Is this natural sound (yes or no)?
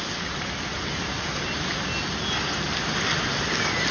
yes